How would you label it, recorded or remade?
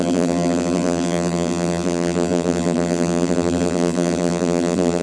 remade